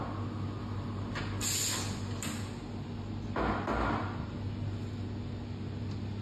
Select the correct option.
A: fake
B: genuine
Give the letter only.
B